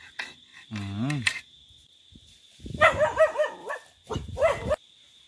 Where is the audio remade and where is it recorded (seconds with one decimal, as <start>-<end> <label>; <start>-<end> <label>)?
0.0-5.3 recorded